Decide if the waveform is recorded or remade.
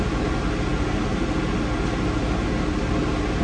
recorded